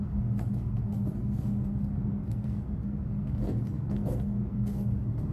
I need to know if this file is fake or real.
fake